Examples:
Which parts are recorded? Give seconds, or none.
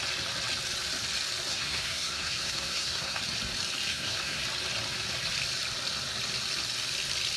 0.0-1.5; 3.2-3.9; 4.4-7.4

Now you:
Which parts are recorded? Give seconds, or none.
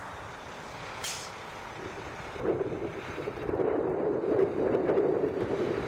0.0-2.9; 5.2-5.9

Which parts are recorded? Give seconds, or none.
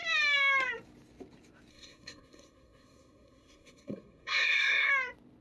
0.0-1.7; 4.9-5.4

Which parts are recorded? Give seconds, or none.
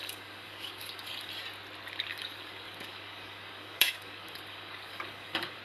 1.3-2.1